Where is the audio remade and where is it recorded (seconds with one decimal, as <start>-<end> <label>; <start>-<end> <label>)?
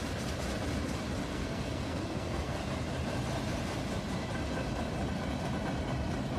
0.0-1.3 recorded; 1.3-2.6 remade; 2.6-6.4 recorded